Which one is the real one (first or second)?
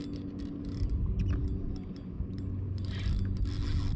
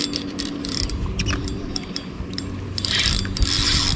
first